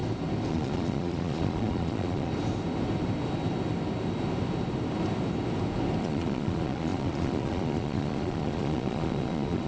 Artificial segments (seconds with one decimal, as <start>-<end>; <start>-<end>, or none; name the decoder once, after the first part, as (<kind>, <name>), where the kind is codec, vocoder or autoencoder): 0.5-2.3 (vocoder, Vocos); 6.0-9.7